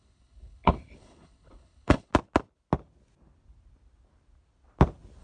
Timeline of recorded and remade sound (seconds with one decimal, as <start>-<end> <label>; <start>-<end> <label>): 0.0-2.1 remade; 2.1-5.2 recorded